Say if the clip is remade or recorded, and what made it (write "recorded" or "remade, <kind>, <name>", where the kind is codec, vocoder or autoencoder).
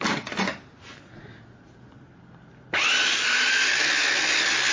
recorded